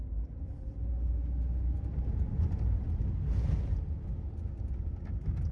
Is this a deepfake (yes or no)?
no